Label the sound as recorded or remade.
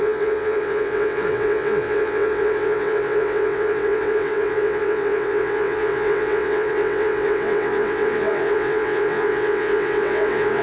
remade